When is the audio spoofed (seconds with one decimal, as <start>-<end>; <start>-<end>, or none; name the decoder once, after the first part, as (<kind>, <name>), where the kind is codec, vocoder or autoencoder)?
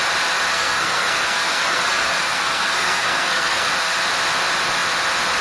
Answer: 0.5-3.7 (codec, SNAC)